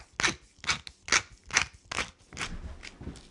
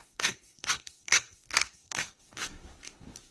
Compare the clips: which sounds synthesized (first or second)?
second